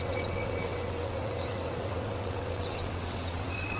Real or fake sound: fake